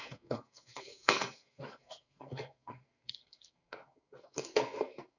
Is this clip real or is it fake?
fake